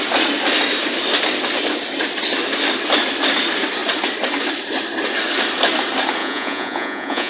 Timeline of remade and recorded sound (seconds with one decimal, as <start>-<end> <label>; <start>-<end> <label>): 0.0-6.2 recorded; 6.2-7.3 remade